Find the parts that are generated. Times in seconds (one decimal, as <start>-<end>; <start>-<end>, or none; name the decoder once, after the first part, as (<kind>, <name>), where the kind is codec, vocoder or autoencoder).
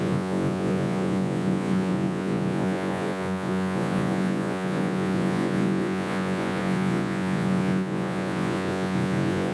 0.0-9.5 (vocoder, Vocos)